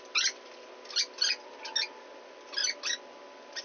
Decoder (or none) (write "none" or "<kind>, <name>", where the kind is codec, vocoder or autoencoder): none